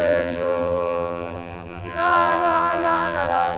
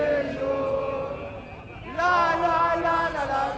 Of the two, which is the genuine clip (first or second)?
second